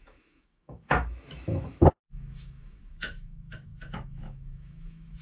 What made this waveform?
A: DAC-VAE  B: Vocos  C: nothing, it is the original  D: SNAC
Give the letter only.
A